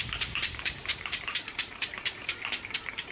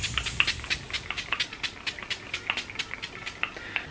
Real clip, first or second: second